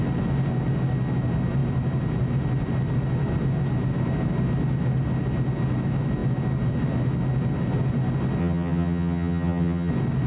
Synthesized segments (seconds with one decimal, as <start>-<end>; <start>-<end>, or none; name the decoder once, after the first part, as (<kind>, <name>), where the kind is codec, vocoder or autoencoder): 8.4-9.9 (vocoder, HiFi-GAN)